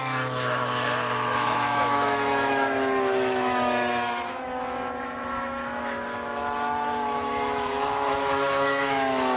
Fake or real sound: fake